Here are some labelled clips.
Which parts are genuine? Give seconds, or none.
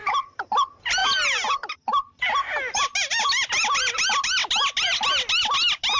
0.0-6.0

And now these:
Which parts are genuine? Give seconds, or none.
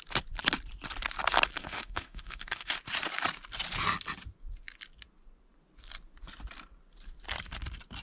0.0-1.6; 2.7-8.0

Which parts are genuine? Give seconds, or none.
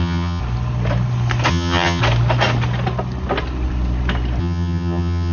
0.4-1.5; 2.0-4.4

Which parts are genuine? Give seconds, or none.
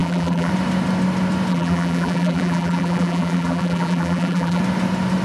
0.5-1.5; 4.6-5.2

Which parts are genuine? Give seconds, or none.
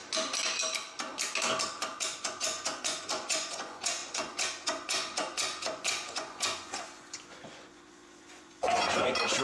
0.0-1.8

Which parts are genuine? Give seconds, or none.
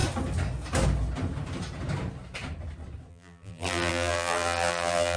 0.0-3.1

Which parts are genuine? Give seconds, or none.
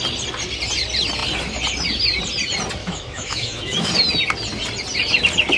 0.0-2.8; 3.9-5.6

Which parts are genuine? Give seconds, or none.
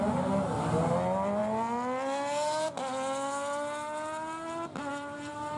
0.0-4.8